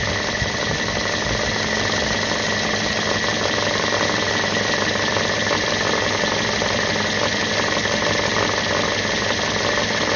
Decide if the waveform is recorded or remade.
recorded